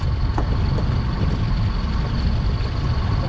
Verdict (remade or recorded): recorded